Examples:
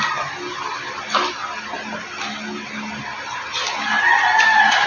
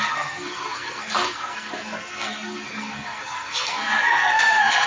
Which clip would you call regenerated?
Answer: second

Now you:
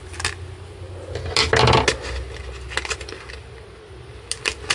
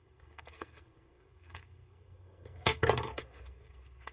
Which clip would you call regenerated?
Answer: second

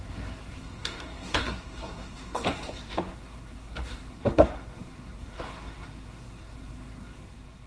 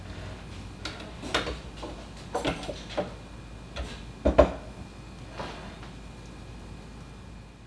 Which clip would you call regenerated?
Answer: first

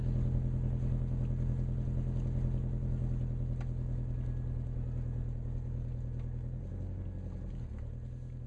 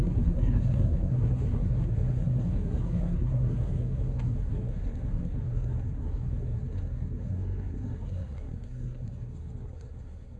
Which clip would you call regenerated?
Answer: second